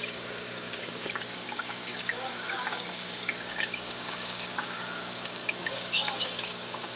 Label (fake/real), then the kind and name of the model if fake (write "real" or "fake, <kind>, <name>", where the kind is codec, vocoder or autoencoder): fake, codec, DAC